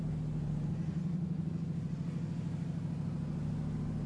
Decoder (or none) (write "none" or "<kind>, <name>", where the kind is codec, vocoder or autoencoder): none